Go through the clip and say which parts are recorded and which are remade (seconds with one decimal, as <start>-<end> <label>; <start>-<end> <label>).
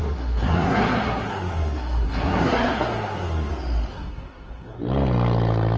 0.0-3.5 remade; 3.5-3.9 recorded; 3.9-4.8 remade; 4.8-5.8 recorded